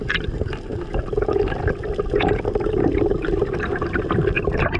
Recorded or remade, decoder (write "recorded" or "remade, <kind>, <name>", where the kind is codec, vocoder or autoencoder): recorded